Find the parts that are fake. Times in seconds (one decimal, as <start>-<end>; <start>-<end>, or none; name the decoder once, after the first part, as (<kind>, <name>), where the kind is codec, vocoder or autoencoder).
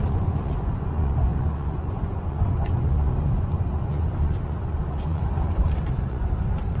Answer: 0.0-6.8 (vocoder, Vocos)